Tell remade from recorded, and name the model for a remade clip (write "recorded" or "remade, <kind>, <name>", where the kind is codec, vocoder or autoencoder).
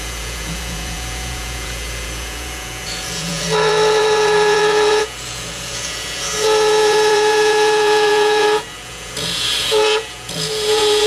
remade, vocoder, Vocos